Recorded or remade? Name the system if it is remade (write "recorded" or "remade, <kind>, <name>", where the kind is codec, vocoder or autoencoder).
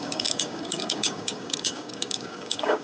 remade, codec, DAC